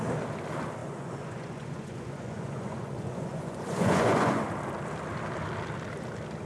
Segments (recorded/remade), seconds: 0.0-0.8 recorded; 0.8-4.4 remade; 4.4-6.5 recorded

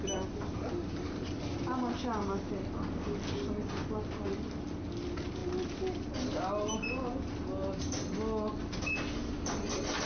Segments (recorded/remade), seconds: 0.0-10.1 recorded

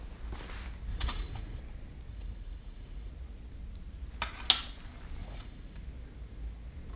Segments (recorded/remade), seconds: 0.0-0.9 recorded; 0.9-1.6 remade; 1.6-2.1 recorded; 2.1-3.1 remade; 3.1-5.2 recorded; 5.2-5.8 remade; 5.8-7.0 recorded

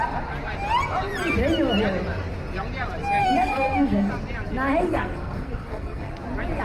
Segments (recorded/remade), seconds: 0.0-3.2 recorded; 3.2-4.1 remade; 4.1-4.8 recorded; 4.8-6.1 remade; 6.1-6.6 recorded

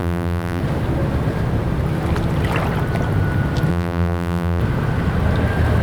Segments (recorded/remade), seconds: 0.0-0.6 remade; 0.6-3.7 recorded; 3.7-4.6 remade; 4.6-5.8 recorded

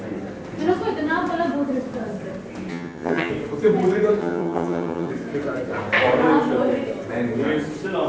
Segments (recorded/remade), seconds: 0.0-2.7 recorded; 2.7-3.3 remade; 3.3-4.2 recorded; 4.2-5.1 remade; 5.1-8.1 recorded

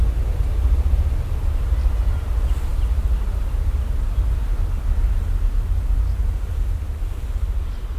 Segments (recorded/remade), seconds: 0.0-8.0 recorded